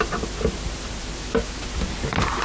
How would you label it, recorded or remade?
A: recorded